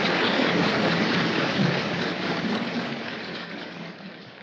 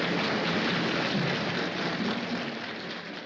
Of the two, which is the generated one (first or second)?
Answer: first